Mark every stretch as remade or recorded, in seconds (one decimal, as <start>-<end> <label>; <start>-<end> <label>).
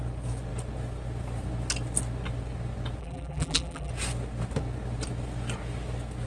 0.0-3.0 recorded; 3.0-3.9 remade; 3.9-6.3 recorded